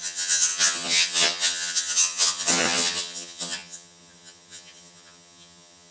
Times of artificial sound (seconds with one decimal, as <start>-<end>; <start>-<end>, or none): 0.0-5.9